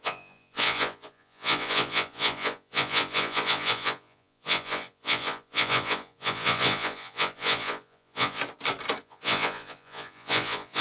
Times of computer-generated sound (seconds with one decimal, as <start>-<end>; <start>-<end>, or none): 0.0-8.4; 9.0-10.8